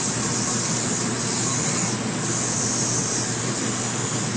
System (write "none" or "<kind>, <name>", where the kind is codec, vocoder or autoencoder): none